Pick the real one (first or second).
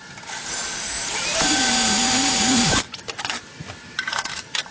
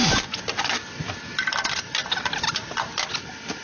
second